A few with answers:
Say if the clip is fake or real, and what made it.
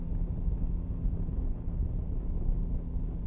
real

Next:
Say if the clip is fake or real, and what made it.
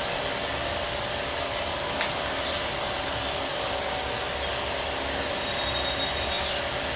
real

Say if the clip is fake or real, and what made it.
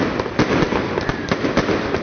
real